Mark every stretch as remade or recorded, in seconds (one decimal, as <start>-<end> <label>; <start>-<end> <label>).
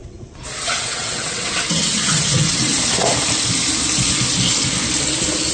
0.0-0.6 recorded; 0.6-2.7 remade; 2.7-5.5 recorded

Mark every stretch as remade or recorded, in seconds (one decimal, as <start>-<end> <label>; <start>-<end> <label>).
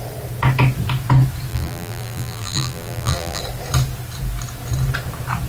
0.0-1.5 recorded; 1.5-3.4 remade; 3.4-5.5 recorded